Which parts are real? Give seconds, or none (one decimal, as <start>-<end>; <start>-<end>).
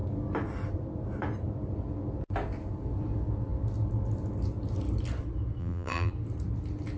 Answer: 0.0-5.6; 6.1-7.0